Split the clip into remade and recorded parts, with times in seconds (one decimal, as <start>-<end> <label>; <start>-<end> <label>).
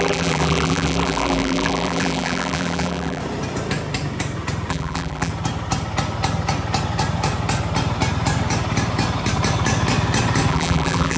0.0-3.2 remade; 3.2-4.7 recorded; 4.7-5.3 remade; 5.3-10.5 recorded; 10.5-11.2 remade